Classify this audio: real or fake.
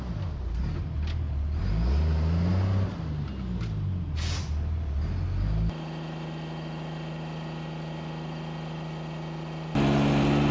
real